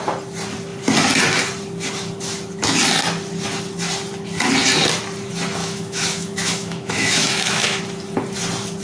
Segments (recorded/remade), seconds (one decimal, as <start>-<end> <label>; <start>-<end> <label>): 0.0-5.6 recorded; 5.6-7.8 remade; 7.8-8.8 recorded